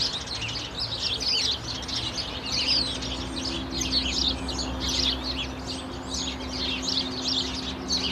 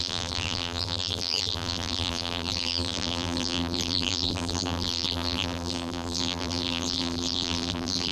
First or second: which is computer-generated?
second